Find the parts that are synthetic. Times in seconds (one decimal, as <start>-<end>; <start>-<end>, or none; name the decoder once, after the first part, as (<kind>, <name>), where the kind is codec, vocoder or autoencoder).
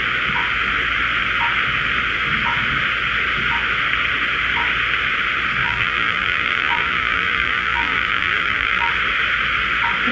5.6-8.9 (vocoder, BigVGAN v2)